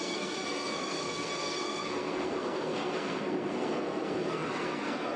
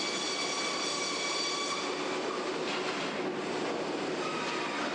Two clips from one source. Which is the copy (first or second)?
first